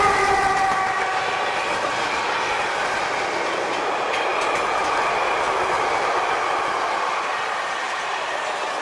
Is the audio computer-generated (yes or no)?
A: no